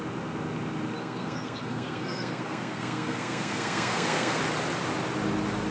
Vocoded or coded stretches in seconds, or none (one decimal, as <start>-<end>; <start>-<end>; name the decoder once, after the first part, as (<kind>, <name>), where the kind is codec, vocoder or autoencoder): 1.0-4.4 (codec, SNAC)